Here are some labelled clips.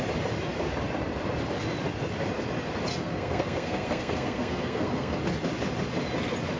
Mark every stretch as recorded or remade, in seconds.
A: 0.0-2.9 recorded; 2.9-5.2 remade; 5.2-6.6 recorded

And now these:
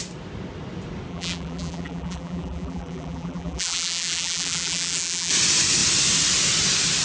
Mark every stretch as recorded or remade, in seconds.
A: 0.0-1.1 recorded; 1.1-5.3 remade; 5.3-7.0 recorded